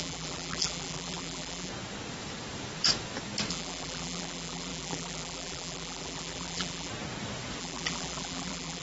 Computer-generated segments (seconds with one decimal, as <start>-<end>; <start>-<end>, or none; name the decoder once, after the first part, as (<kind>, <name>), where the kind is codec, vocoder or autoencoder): 0.0-1.7 (vocoder, BigVGAN v2); 3.5-6.9; 7.6-8.8